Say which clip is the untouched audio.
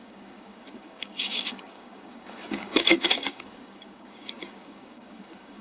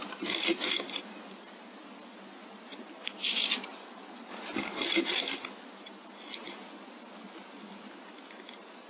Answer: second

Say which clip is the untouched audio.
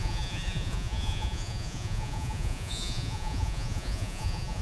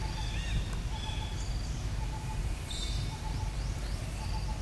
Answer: second